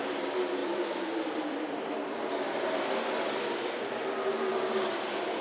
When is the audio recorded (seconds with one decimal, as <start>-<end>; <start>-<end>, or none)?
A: 0.0-0.6; 3.8-5.4